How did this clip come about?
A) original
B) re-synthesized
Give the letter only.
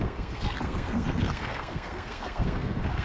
B